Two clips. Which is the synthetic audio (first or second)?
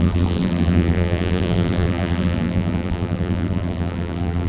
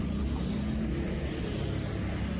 first